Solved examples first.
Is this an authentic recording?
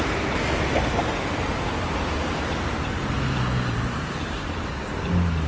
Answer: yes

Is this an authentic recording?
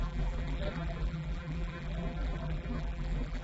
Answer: no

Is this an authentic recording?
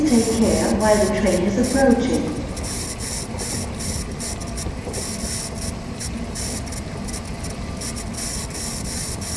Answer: yes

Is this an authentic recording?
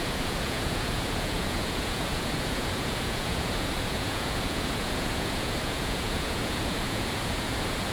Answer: no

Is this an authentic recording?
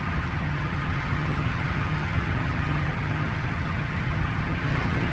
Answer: no